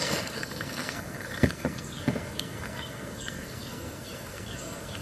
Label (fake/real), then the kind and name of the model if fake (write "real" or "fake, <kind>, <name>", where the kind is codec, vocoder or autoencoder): fake, codec, SNAC